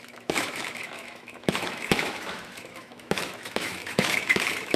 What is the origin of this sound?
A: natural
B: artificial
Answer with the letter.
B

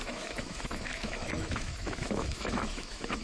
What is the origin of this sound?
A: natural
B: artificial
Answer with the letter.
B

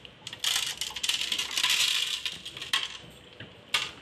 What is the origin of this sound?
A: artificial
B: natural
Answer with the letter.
B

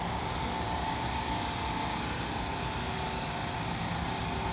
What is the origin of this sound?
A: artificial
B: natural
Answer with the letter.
B